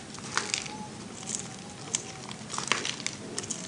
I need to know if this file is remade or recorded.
recorded